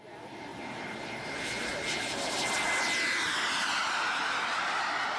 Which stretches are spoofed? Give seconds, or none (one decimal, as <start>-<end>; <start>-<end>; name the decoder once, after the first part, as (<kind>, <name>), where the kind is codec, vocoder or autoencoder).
0.5-1.7 (vocoder, BigVGAN v2)